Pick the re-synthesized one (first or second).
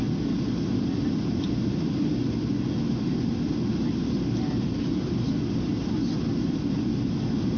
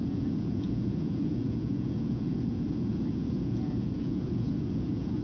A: second